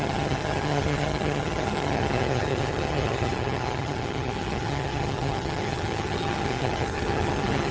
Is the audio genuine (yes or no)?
no